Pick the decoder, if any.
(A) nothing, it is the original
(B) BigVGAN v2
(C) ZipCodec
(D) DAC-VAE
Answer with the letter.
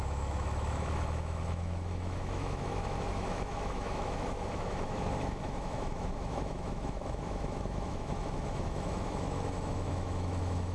D